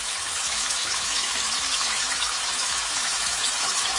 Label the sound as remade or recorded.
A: remade